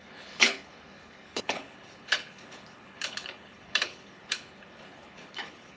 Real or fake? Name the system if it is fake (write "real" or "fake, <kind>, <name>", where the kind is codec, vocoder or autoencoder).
fake, codec, HILCodec